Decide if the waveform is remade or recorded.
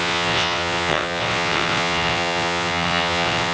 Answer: remade